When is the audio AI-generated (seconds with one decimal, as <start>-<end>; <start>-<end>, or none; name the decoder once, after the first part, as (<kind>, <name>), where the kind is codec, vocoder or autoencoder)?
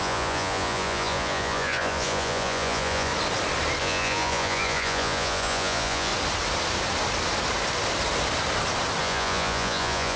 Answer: 0.0-3.1 (vocoder, Vocos); 3.8-6.1; 9.0-10.2